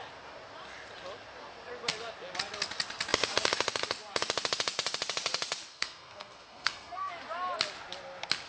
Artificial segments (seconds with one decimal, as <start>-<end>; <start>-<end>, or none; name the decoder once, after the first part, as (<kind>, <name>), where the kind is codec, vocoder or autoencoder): 5.7-7.1 (codec, SNAC)